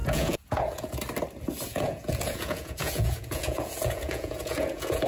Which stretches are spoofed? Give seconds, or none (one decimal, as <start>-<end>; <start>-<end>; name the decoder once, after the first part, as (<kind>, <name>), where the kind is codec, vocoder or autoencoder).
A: 0.0-1.0 (vocoder, Vocos); 1.7-5.1